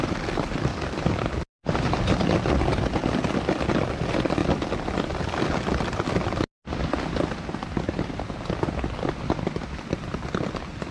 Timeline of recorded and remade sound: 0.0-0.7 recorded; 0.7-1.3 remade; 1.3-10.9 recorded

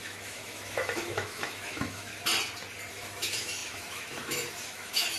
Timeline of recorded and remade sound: 0.0-2.1 remade; 2.1-2.9 recorded; 2.9-5.2 remade